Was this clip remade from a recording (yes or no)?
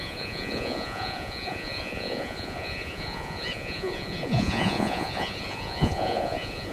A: yes